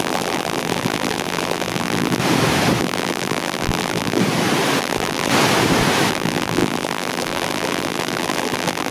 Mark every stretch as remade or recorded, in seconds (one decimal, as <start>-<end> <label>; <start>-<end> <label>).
0.0-2.2 remade; 2.2-2.8 recorded; 2.8-4.2 remade; 4.2-4.8 recorded; 4.8-5.3 remade; 5.3-6.1 recorded; 6.1-8.9 remade